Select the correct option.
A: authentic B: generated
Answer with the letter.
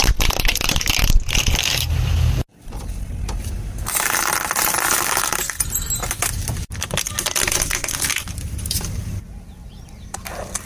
A